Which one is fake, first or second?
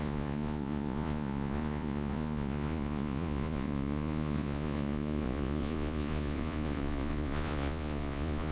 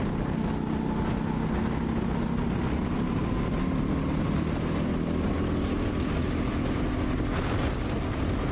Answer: first